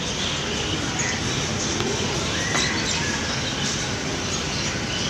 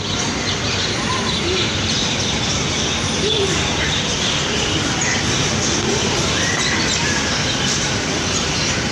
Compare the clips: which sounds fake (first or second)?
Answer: second